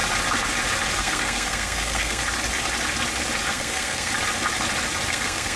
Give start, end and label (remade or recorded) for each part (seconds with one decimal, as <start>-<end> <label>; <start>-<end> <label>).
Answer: 0.0-1.0 recorded; 1.0-2.2 remade; 2.2-3.5 recorded; 3.5-4.1 remade; 4.1-5.1 recorded; 5.1-5.6 remade